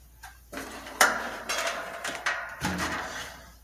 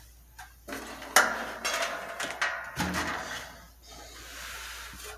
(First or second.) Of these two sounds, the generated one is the first